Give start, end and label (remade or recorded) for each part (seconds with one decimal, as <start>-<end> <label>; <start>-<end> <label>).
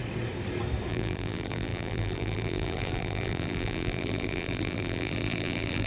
0.0-0.9 recorded; 0.9-5.9 remade